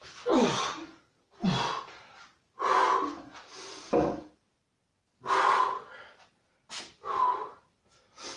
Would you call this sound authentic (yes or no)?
yes